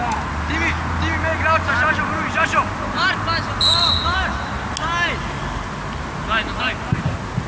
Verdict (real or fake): real